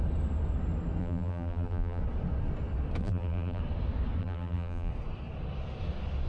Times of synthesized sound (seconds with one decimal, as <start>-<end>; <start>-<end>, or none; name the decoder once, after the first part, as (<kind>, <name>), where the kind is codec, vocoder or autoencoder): 1.0-2.0 (vocoder, BigVGAN v2); 3.0-3.6; 4.2-4.9